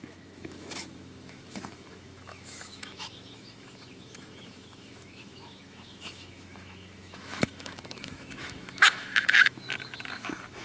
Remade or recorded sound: remade